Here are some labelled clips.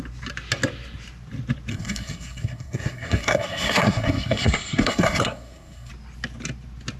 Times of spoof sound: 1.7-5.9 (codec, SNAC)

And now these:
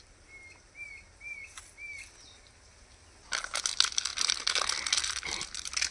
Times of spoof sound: none

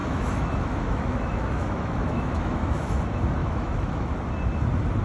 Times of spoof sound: 0.0-3.0 (autoencoder, DAC-VAE); 3.4-4.1